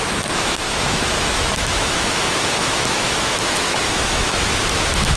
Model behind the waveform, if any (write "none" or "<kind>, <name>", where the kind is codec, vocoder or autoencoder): autoencoder, DAC-VAE